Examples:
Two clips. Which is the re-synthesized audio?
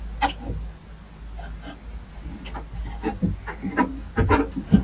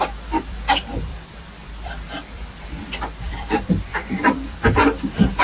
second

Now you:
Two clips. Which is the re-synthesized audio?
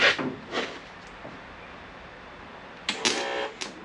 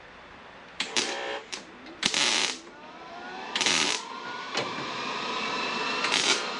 second